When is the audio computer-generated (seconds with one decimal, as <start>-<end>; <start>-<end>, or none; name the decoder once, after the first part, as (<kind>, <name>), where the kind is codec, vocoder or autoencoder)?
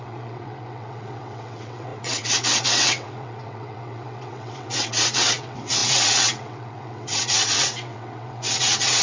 0.0-9.0 (vocoder, WaveNeXt)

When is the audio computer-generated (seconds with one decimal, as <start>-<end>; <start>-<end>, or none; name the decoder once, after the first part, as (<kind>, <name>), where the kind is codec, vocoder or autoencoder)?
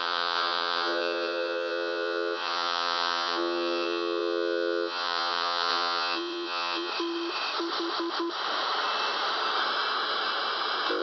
0.0-6.9 (vocoder, WaveNeXt)